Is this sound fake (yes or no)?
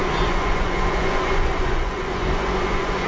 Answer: yes